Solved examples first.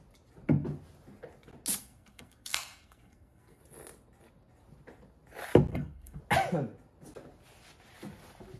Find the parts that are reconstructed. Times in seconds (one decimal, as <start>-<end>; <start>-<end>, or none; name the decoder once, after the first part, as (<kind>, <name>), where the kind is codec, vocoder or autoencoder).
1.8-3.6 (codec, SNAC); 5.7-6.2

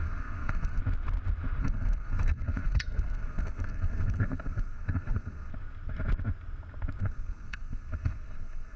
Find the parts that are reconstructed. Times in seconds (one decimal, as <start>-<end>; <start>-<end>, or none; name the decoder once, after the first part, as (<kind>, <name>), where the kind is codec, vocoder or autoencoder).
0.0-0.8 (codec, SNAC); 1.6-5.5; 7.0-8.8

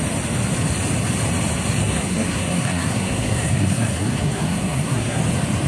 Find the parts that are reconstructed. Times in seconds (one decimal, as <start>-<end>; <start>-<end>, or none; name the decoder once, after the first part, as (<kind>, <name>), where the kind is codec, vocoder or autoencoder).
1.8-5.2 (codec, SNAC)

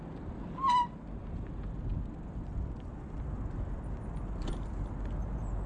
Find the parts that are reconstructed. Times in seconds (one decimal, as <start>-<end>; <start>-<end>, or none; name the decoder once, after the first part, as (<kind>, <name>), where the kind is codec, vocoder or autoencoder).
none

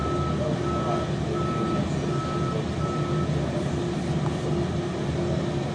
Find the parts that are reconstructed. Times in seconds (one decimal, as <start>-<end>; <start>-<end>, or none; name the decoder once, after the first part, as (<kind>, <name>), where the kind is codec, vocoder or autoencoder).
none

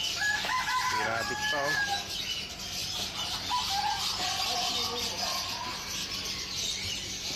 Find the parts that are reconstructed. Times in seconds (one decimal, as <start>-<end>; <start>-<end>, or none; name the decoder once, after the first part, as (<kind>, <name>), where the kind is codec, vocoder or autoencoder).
none

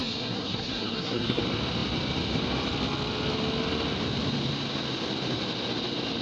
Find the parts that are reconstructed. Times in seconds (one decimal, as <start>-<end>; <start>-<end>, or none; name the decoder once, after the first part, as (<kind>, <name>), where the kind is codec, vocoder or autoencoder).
0.0-1.4 (codec, SNAC)

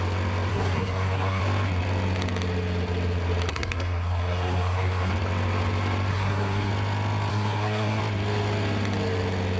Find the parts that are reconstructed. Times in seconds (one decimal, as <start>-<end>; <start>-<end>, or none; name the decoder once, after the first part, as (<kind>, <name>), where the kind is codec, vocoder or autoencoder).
0.5-1.4 (codec, SNAC); 3.5-5.1; 6.1-6.7; 7.3-8.0